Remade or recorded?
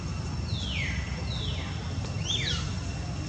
recorded